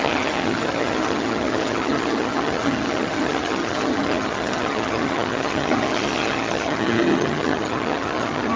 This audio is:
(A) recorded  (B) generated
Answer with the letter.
B